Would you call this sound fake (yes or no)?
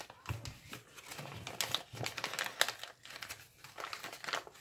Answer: no